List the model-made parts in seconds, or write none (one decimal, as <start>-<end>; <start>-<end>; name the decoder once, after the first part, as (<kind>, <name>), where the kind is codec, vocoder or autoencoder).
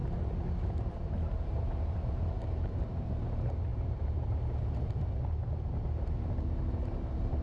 0.6-7.4 (vocoder, BigVGAN v2)